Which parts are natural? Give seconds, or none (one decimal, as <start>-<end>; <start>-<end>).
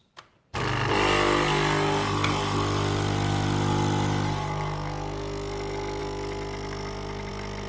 0.0-7.7